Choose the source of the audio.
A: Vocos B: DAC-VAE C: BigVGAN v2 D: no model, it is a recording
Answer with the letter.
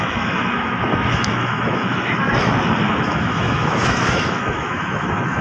B